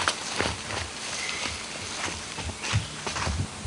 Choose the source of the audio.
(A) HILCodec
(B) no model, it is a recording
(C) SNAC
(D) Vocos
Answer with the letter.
B